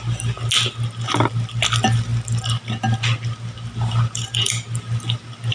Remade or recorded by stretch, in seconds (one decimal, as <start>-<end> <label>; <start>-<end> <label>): 0.0-2.1 recorded; 2.1-5.5 remade